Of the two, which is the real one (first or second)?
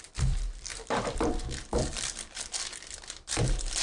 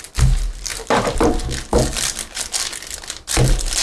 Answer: second